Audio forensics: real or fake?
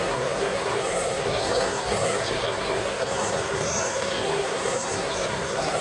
fake